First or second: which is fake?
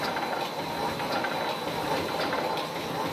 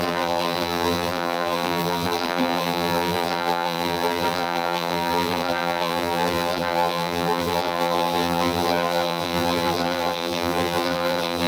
second